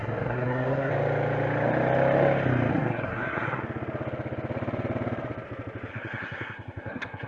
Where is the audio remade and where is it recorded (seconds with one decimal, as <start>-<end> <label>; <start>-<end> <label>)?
0.0-0.9 remade; 0.9-2.7 recorded; 2.7-3.6 remade; 3.6-5.9 recorded; 5.9-7.3 remade